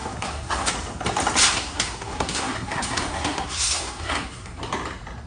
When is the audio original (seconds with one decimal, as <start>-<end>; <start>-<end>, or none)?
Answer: 0.7-1.4; 4.6-5.3